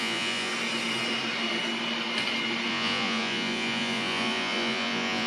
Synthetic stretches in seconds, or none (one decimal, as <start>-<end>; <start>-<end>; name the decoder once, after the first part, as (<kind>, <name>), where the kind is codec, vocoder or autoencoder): 0.0-0.5 (vocoder, Vocos); 2.7-5.3